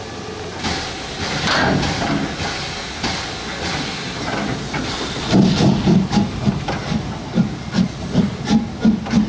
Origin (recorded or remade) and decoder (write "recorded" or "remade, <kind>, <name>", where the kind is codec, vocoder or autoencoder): recorded